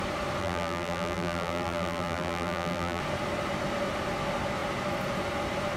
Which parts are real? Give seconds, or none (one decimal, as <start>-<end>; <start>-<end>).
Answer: 0.0-0.4; 3.0-5.8